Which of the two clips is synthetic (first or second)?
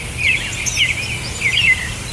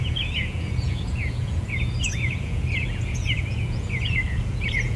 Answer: second